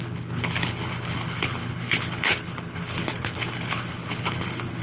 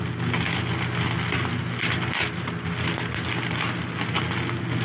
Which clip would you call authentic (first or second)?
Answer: second